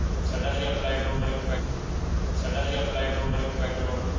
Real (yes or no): yes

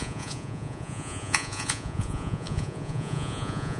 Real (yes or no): no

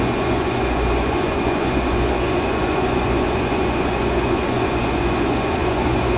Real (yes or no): no